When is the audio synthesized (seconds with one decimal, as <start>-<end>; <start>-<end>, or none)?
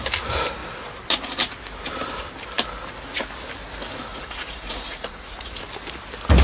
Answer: 4.1-5.6